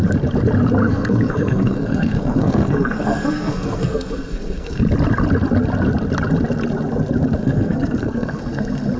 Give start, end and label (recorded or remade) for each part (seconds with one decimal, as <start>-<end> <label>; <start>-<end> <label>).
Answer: 0.0-0.8 recorded; 0.8-4.8 remade; 4.8-7.4 recorded; 7.4-8.4 remade; 8.4-9.0 recorded